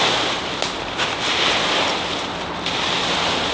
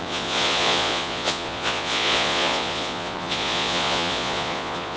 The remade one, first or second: second